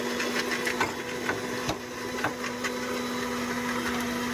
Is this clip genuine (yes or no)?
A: yes